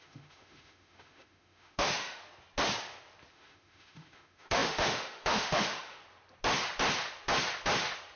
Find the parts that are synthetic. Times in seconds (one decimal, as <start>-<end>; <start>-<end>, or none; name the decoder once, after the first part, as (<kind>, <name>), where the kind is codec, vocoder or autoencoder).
0.0-2.2 (autoencoder, DAC-VAE); 3.3-6.0